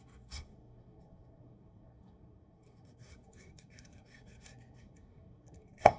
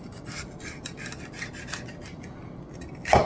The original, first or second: second